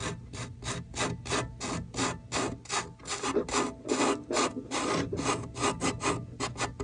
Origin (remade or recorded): recorded